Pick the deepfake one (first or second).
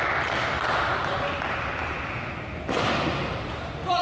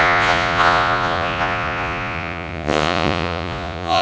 second